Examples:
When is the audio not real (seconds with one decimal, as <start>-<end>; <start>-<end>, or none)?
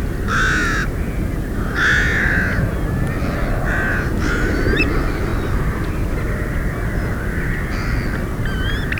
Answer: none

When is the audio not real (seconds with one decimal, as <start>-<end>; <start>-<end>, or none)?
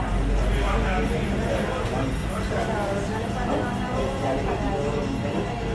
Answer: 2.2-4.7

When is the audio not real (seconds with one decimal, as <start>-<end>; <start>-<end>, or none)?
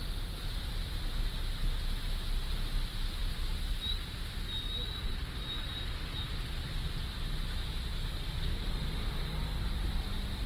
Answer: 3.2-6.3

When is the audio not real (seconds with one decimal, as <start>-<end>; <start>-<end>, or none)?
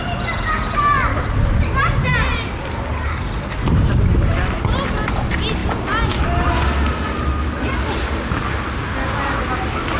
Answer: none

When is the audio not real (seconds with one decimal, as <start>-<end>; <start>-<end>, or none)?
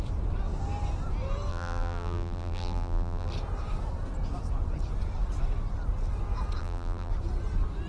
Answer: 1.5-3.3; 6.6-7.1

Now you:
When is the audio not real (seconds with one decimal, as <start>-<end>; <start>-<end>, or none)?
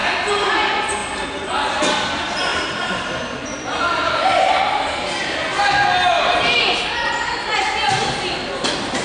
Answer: 0.0-0.6; 2.5-4.5